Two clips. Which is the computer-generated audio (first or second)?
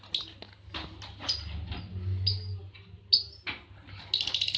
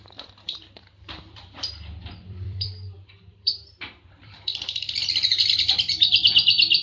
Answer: second